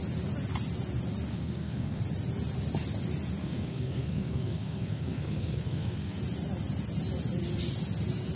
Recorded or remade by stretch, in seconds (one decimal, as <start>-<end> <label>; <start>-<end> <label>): 0.0-1.3 recorded; 1.3-2.0 remade; 2.0-3.4 recorded; 3.4-6.2 remade; 6.2-8.4 recorded